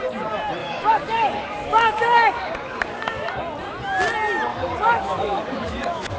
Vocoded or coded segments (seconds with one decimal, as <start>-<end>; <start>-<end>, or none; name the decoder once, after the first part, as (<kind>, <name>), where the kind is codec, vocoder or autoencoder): 0.6-3.3 (codec, DAC); 4.5-6.2